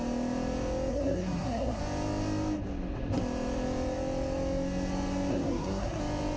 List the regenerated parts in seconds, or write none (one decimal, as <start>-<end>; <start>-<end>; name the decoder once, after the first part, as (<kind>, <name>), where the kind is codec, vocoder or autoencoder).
0.9-1.8 (codec, SNAC); 5.3-6.0